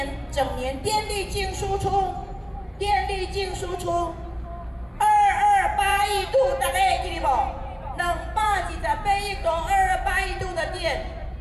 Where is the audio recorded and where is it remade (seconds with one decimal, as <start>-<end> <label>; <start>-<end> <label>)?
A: 0.0-2.2 recorded; 2.2-3.7 remade; 3.7-5.9 recorded; 5.9-8.7 remade; 8.7-11.4 recorded